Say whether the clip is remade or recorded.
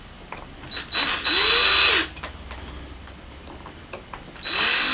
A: recorded